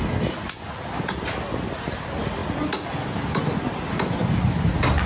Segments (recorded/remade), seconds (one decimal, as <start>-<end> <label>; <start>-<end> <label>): 0.0-5.1 recorded

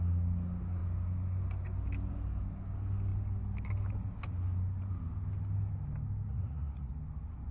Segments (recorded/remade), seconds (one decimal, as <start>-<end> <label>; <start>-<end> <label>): 0.0-6.3 recorded; 6.3-6.9 remade; 6.9-7.5 recorded

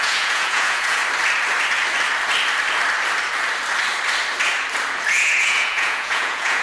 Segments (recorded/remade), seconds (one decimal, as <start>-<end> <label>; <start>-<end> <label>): 0.0-1.0 remade; 1.0-5.0 recorded; 5.0-6.6 remade

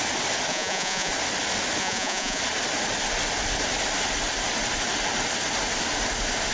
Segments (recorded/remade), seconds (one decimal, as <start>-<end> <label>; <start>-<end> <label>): 0.0-0.5 recorded; 0.5-1.1 remade; 1.1-1.8 recorded; 1.8-2.4 remade; 2.4-6.5 recorded

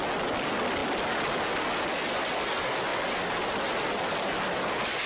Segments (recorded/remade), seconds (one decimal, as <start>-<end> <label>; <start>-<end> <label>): 0.0-5.1 recorded

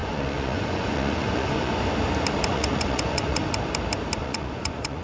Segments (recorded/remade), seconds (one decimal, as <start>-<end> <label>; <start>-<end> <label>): 0.0-1.7 remade; 1.7-2.5 recorded; 2.5-3.4 remade; 3.4-4.2 recorded; 4.2-5.0 remade

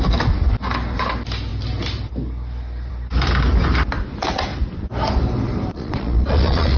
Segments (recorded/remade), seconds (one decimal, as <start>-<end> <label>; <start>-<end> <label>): 0.0-5.7 recorded; 5.7-6.8 remade